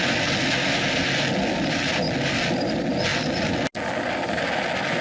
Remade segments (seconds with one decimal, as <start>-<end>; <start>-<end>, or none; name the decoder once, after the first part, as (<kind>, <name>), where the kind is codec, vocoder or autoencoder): none